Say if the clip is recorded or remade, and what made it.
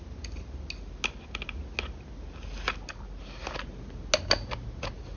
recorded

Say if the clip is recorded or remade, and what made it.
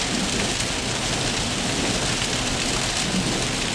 recorded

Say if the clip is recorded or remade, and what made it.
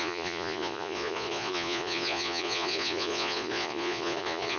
remade, vocoder, Vocos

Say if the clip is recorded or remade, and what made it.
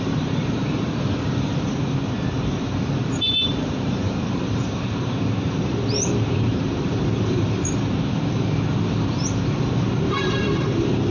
remade, vocoder, BigVGAN v2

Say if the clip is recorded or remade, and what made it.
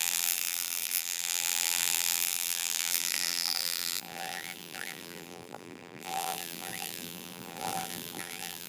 remade, vocoder, BigVGAN v2